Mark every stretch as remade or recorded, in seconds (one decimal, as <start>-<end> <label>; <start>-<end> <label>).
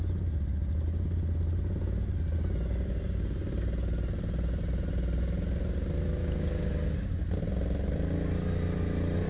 0.0-6.2 recorded; 6.2-6.7 remade; 6.7-9.3 recorded